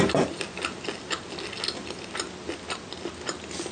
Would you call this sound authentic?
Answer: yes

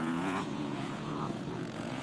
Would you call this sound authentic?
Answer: no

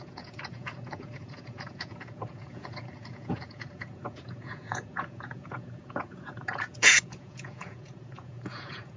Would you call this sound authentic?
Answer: no